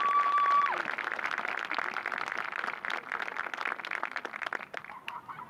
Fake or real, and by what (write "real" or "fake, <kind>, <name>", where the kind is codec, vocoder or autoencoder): real